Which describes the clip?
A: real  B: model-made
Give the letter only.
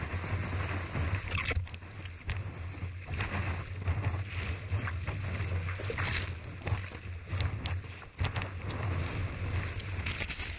A